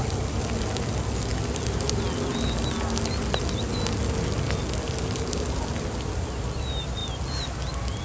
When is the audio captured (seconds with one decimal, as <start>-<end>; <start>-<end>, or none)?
0.0-8.0